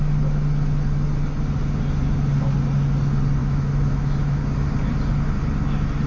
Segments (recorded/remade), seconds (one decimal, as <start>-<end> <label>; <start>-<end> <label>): 0.0-3.4 recorded; 3.4-4.4 remade; 4.4-6.1 recorded

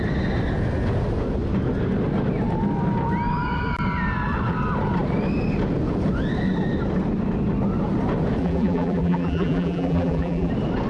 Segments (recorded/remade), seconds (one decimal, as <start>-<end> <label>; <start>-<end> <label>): 0.0-8.4 recorded; 8.4-10.5 remade; 10.5-10.9 recorded